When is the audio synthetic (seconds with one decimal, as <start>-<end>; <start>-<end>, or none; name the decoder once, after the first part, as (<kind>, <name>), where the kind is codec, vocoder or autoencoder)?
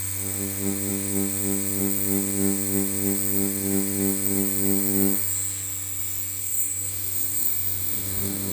6.4-8.5 (codec, DAC)